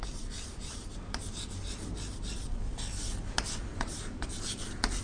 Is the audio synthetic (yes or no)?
no